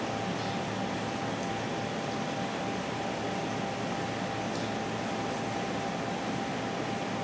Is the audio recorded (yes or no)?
yes